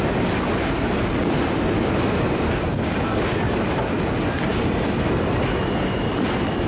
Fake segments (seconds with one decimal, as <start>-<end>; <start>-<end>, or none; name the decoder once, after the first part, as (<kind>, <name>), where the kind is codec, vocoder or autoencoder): none